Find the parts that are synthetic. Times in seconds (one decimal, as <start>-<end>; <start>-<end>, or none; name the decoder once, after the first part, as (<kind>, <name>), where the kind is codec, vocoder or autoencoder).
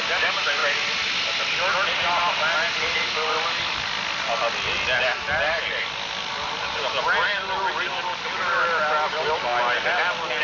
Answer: none